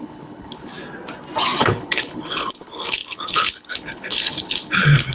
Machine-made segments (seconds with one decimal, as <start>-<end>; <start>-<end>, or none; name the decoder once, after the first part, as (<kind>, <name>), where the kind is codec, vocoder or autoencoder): 0.0-0.7 (codec, HILCodec); 1.6-5.1